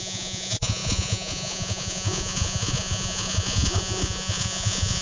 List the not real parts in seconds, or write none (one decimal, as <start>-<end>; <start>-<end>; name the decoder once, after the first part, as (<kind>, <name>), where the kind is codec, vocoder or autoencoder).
0.0-5.0 (vocoder, Vocos)